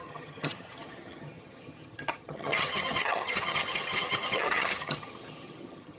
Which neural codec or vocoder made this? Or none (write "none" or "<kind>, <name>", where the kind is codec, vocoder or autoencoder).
vocoder, HiFi-GAN